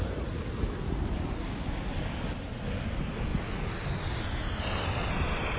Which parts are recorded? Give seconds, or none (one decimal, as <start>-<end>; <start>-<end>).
0.0-5.6